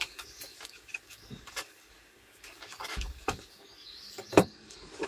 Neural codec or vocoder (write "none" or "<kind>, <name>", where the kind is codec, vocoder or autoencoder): codec, DAC